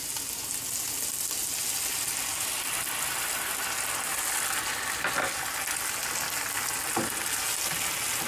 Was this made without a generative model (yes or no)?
yes